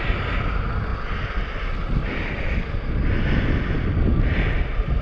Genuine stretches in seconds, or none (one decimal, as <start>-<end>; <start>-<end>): 0.0-5.0